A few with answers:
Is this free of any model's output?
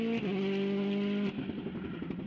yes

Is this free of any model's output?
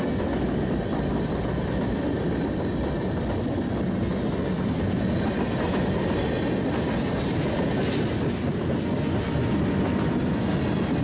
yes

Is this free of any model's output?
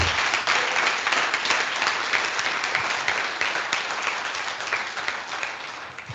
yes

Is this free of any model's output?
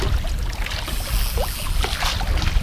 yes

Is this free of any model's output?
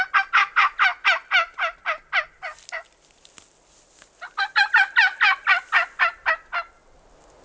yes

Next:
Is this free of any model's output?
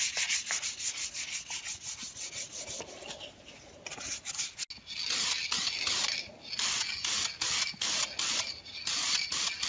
yes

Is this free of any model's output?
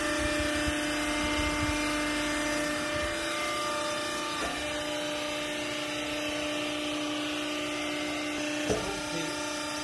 yes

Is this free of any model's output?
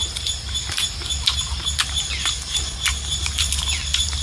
no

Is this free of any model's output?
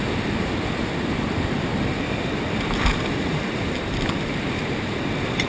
yes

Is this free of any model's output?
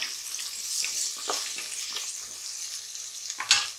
yes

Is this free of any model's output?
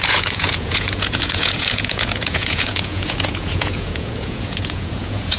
no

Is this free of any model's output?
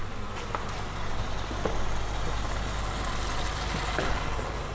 yes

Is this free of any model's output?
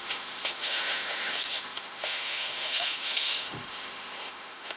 no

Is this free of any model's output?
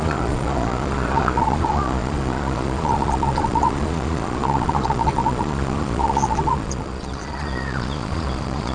no